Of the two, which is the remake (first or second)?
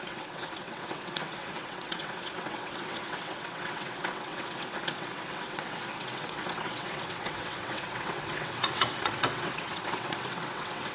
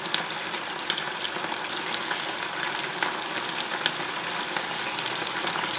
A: first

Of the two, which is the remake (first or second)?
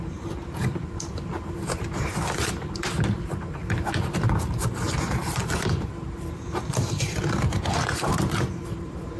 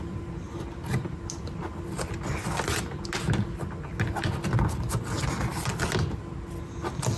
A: first